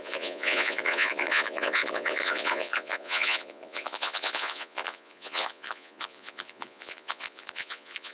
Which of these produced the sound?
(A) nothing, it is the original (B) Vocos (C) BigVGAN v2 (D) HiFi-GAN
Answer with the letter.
B